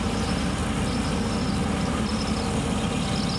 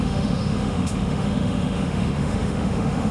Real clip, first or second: first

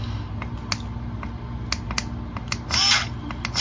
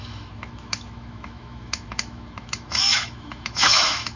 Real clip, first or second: first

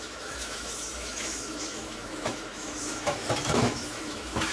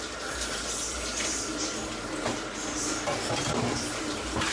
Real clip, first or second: second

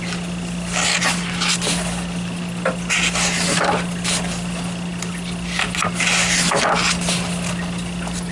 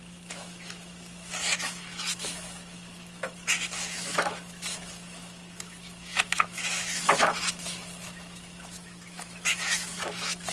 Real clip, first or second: first